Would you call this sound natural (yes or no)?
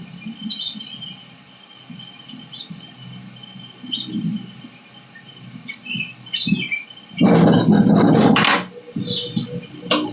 yes